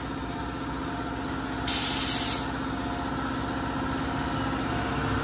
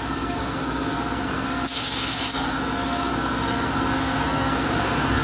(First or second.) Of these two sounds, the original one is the first